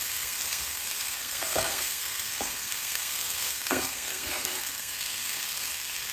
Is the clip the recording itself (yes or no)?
no